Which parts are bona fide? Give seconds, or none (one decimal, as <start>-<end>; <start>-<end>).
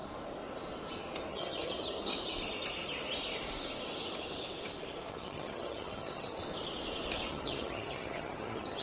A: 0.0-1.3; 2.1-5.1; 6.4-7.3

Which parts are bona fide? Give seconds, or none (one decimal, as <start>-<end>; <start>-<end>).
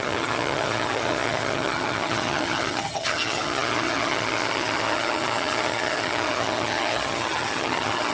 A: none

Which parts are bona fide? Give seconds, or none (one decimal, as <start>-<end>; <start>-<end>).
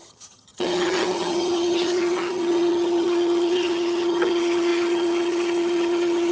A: none